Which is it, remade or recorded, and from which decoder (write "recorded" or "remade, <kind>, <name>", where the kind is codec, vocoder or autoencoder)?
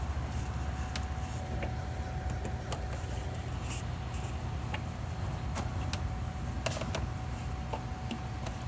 recorded